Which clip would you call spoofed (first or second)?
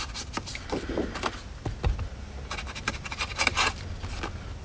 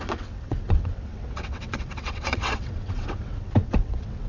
second